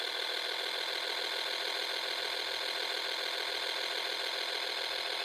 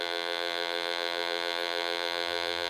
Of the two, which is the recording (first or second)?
first